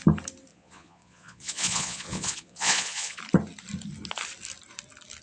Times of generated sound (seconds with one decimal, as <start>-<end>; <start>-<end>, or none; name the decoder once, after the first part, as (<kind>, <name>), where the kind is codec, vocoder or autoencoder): 0.5-3.2 (vocoder, Vocos)